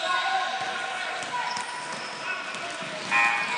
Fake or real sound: real